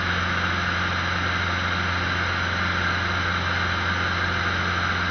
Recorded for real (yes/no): yes